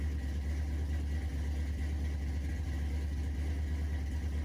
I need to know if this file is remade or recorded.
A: recorded